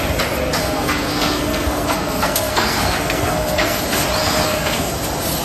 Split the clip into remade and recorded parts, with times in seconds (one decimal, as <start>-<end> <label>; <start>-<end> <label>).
0.0-0.6 recorded; 0.6-3.8 remade; 3.8-4.2 recorded; 4.2-4.9 remade; 4.9-5.4 recorded